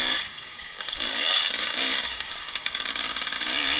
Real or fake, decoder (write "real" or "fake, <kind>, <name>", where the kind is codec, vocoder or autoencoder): fake, codec, DAC